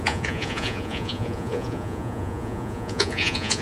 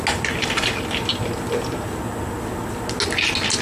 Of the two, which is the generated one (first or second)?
first